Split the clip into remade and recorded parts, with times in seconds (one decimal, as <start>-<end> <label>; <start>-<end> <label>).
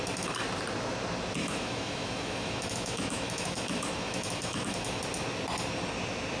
0.0-1.4 recorded; 1.4-5.0 remade; 5.0-6.4 recorded